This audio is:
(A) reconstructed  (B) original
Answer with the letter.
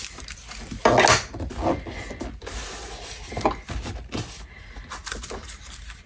B